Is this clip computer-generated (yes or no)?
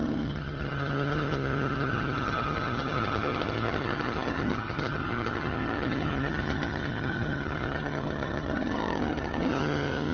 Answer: yes